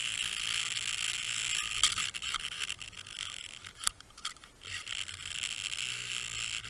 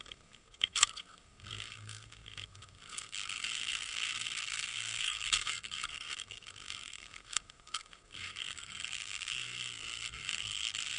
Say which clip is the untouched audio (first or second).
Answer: first